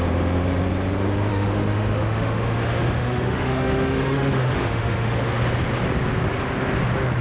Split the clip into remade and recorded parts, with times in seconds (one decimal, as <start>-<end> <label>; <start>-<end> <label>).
0.0-1.3 recorded; 1.3-5.3 remade; 5.3-7.2 recorded